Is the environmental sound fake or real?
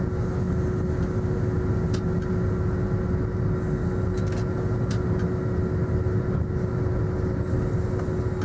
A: real